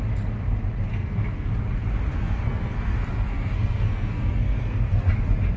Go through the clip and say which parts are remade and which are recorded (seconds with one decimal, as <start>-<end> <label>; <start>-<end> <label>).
0.0-0.9 recorded; 0.9-1.5 remade; 1.5-2.1 recorded; 2.1-5.1 remade; 5.1-5.6 recorded